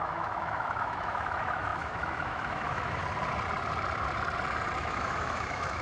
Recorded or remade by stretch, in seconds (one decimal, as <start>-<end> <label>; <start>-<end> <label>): 0.0-3.0 remade; 3.0-4.8 recorded; 4.8-5.8 remade